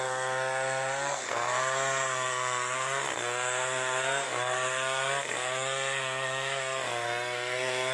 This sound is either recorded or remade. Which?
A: remade